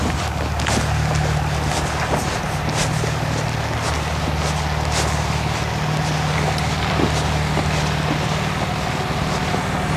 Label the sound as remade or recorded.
recorded